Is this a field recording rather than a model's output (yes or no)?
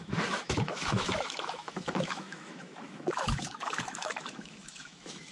no